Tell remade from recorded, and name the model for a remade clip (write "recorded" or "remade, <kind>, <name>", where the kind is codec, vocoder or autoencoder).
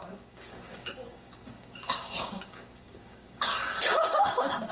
remade, codec, DAC